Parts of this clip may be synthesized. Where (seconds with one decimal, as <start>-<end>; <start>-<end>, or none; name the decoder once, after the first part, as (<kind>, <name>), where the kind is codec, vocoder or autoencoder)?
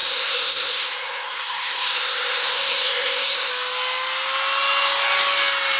0.0-3.5 (codec, SNAC)